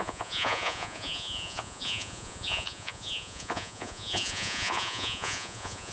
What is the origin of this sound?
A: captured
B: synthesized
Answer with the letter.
B